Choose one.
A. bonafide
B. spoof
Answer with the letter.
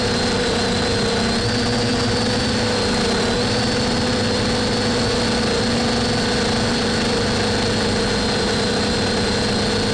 A